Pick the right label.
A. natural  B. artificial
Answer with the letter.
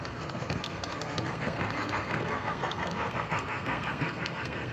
B